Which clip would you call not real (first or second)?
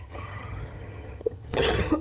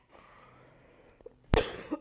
first